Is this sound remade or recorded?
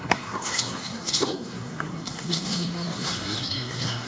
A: remade